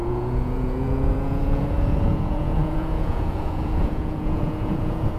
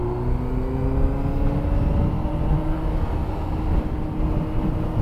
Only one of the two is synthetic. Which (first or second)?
first